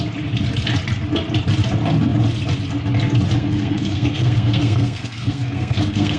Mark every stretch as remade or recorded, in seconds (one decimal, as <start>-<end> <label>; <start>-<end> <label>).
0.0-3.4 recorded; 3.4-6.2 remade